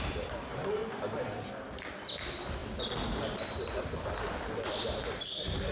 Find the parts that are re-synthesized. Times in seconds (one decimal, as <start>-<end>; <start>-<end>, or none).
0.8-1.8; 2.6-5.7